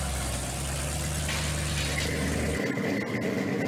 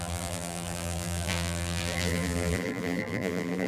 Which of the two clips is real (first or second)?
first